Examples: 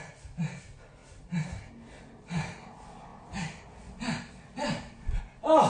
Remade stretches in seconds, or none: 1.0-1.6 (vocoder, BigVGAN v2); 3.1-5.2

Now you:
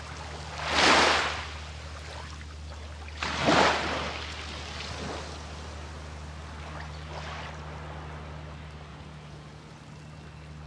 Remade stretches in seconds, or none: 8.9-9.7 (vocoder, Vocos)

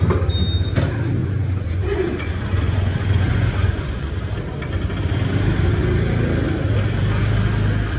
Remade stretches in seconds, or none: 1.2-4.1 (vocoder, Vocos)

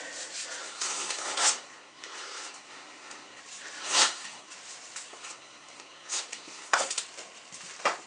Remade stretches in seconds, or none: 0.6-3.4 (codec, SNAC); 3.8-4.5; 5.1-7.0

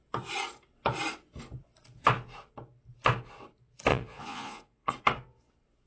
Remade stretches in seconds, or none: 3.9-4.9 (vocoder, Vocos)

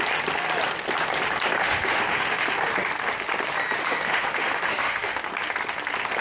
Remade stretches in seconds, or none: 1.6-2.7 (autoencoder, DAC-VAE); 3.8-5.2

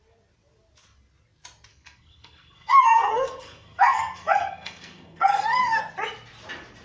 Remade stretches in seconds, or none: 1.7-5.8 (codec, SNAC)